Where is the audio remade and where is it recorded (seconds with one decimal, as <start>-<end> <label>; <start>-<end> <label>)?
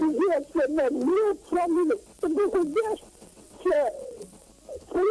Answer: 0.0-1.4 recorded; 1.4-4.5 remade; 4.5-5.1 recorded